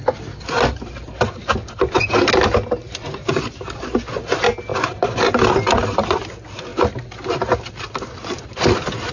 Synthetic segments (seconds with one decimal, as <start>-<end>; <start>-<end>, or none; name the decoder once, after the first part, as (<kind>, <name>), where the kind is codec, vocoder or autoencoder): none